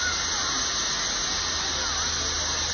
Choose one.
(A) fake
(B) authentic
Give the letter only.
B